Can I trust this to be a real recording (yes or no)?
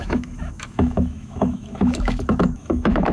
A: no